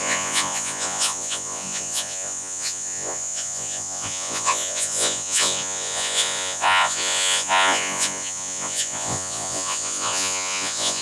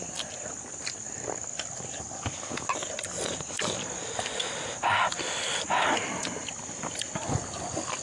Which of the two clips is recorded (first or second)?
second